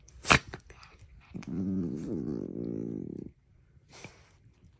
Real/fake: fake